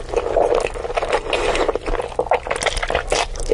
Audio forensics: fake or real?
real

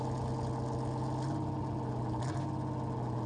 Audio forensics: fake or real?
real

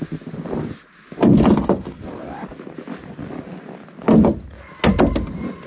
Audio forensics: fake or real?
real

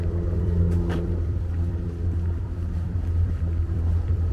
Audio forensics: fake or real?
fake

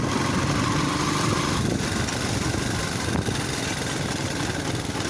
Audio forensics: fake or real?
fake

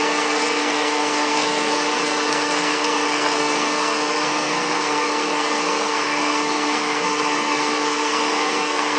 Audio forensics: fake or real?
fake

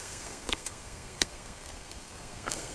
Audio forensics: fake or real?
fake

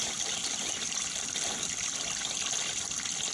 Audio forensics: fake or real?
fake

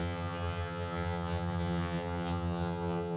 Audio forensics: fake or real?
fake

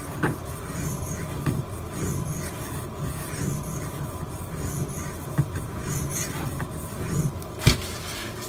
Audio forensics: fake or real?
real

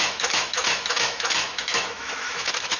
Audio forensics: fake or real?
fake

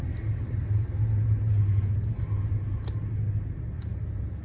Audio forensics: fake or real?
real